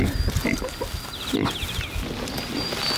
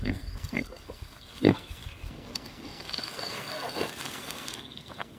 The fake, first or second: second